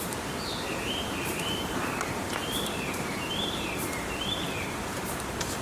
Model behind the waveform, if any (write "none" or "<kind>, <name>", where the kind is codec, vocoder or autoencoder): vocoder, BigVGAN v2